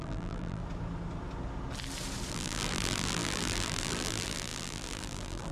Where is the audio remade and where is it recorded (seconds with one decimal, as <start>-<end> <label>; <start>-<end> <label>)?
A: 0.0-0.6 remade; 0.6-2.3 recorded; 2.3-5.5 remade